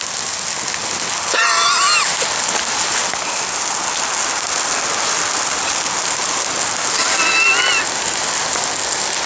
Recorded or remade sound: recorded